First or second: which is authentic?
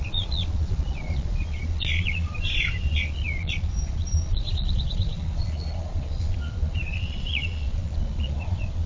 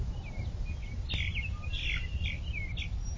second